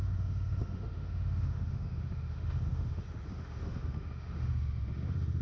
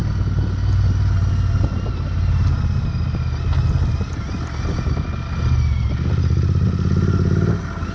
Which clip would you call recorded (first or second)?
second